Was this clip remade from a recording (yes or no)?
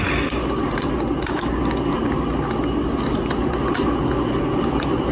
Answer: no